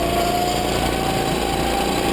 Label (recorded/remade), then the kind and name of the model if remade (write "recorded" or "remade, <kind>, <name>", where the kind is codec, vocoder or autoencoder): recorded